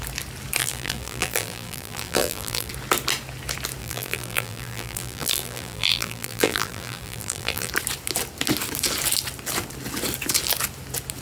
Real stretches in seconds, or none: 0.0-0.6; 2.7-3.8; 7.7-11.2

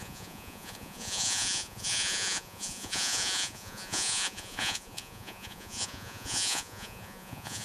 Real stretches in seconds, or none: none